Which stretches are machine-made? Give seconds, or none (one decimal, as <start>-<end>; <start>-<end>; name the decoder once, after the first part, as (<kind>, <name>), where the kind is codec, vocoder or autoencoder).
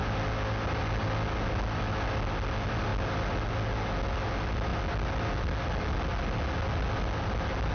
none